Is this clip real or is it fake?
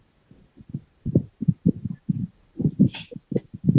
fake